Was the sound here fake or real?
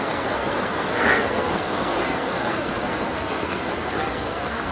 fake